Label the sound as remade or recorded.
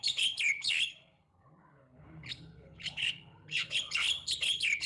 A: remade